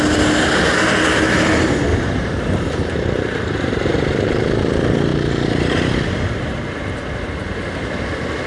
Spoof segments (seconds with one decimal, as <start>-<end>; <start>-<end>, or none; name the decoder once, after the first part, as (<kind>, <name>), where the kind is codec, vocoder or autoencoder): 1.9-4.4 (vocoder, BigVGAN v2); 5.1-8.5